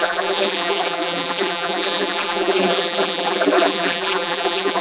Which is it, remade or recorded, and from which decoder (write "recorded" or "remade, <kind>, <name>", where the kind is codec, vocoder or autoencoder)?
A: remade, vocoder, BigVGAN v2